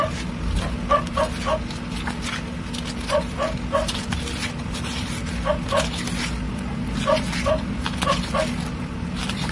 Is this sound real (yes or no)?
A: yes